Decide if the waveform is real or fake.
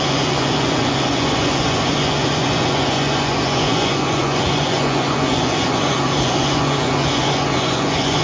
fake